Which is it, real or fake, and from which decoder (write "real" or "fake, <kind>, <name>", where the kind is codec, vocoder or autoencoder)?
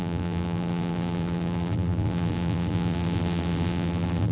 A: fake, vocoder, BigVGAN v2